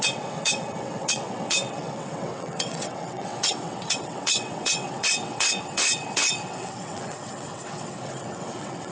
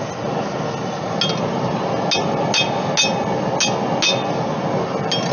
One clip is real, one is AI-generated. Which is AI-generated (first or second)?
first